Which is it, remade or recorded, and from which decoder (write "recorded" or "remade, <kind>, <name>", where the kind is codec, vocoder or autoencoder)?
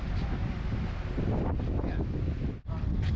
recorded